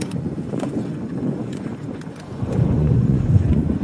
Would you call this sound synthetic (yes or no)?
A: yes